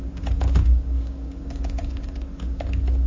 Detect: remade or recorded remade